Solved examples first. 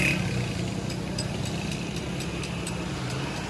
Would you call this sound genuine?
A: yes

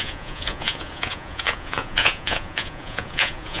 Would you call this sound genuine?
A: no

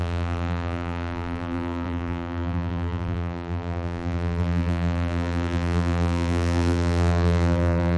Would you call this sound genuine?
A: no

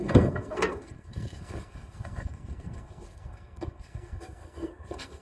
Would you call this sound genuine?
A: no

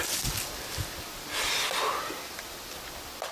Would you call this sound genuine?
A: yes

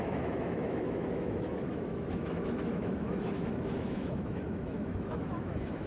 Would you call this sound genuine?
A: no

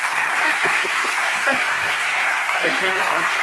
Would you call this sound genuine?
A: no